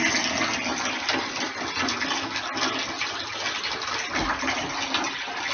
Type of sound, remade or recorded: recorded